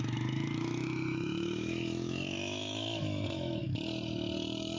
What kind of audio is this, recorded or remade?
remade